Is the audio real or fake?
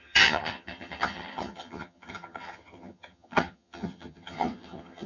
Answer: fake